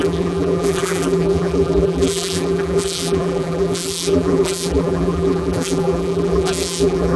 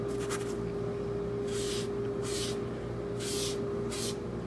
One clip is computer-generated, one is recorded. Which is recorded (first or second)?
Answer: second